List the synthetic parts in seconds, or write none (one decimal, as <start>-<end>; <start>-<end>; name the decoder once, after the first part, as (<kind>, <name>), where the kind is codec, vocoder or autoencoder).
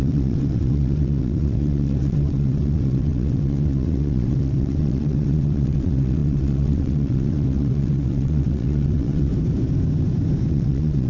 0.0-9.3 (vocoder, WaveNeXt); 10.5-11.1